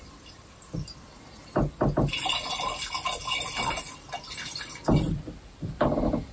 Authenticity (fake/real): real